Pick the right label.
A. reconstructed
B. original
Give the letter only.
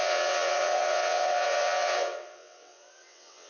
A